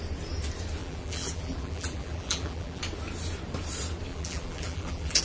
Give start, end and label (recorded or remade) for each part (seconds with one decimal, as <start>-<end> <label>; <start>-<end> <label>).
0.0-0.8 recorded; 0.8-2.8 remade; 2.8-4.1 recorded; 4.1-5.2 remade